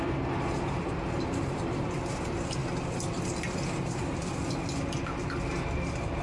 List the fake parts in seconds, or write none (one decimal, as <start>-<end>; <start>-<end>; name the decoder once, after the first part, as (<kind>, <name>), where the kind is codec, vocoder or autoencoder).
none